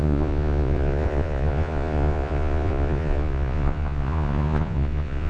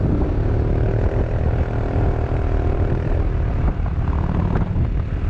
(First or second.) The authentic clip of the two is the second